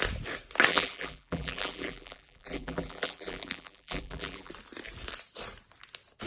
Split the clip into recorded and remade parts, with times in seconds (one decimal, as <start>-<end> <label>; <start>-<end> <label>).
0.0-0.7 recorded; 0.7-4.5 remade; 4.5-6.3 recorded

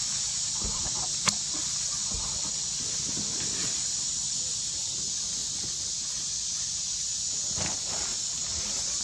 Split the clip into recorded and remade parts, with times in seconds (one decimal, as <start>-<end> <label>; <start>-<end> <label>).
0.0-3.6 recorded; 3.6-4.7 remade; 4.7-5.4 recorded; 5.4-5.9 remade; 5.9-9.0 recorded